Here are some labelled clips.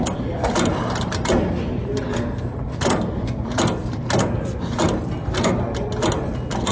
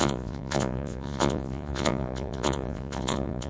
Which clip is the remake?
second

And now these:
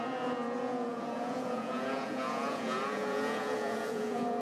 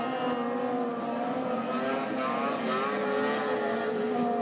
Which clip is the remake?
first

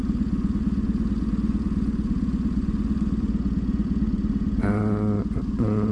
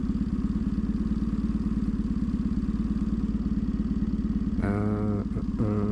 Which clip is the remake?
first